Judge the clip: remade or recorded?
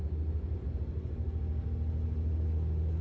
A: recorded